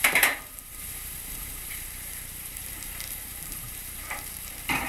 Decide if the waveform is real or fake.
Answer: fake